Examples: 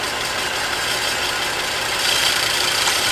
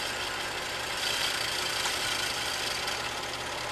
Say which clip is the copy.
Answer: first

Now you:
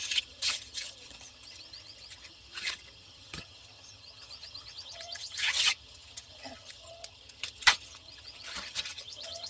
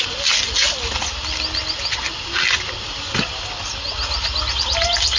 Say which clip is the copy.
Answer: first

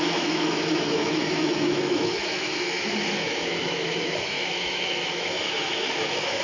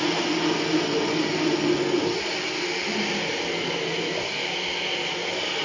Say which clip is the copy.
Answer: first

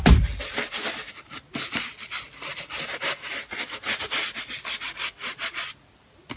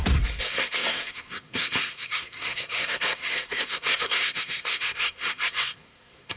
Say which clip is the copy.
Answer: second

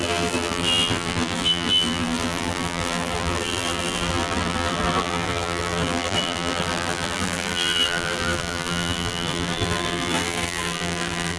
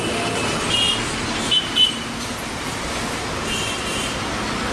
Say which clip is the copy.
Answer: first